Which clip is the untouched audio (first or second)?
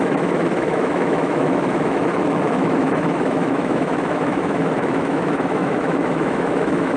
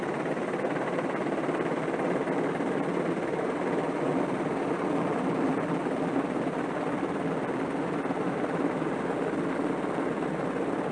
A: second